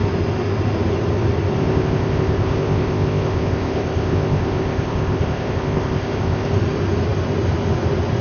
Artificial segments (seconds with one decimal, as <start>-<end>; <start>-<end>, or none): 1.6-6.5